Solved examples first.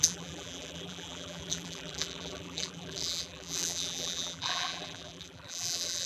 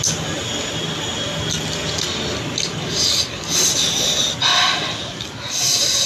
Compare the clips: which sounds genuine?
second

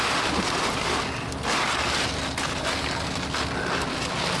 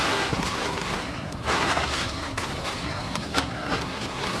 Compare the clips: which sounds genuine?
first